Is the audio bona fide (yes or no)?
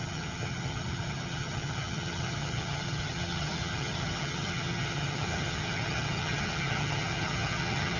no